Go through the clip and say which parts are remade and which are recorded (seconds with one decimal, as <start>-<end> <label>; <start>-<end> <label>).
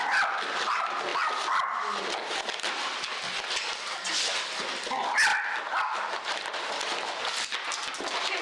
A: 0.0-8.4 recorded